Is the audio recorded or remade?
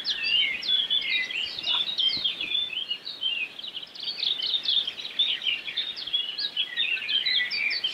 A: recorded